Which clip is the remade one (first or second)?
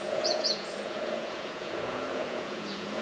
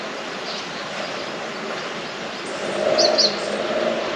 first